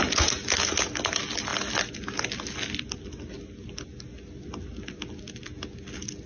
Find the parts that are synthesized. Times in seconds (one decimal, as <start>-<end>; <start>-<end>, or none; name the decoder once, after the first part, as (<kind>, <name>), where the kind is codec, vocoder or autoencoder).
none